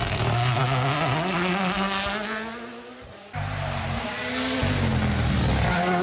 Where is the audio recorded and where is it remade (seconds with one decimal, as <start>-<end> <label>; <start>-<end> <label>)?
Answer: 0.0-6.0 recorded

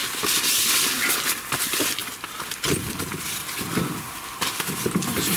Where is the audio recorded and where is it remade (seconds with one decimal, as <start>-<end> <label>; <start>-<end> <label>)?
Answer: 0.0-5.4 recorded

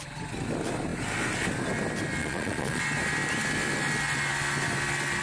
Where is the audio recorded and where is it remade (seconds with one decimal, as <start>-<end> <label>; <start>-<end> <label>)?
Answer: 0.0-2.2 recorded; 2.2-2.8 remade; 2.8-5.2 recorded

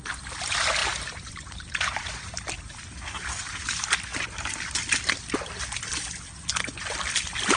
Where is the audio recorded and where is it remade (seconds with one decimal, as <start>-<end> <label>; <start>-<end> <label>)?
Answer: 0.0-0.8 recorded; 0.8-2.1 remade; 2.1-7.6 recorded

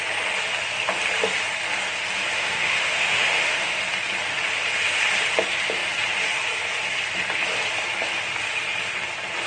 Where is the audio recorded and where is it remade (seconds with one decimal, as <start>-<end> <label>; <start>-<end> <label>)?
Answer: 0.0-2.4 recorded; 2.4-3.8 remade; 3.8-9.5 recorded

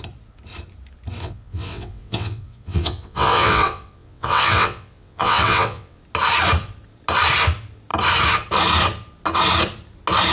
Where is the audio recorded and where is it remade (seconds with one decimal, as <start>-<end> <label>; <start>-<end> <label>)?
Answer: 0.0-1.2 recorded; 1.2-6.0 remade; 6.0-10.3 recorded